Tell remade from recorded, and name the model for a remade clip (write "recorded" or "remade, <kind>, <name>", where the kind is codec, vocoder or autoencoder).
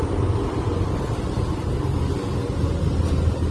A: recorded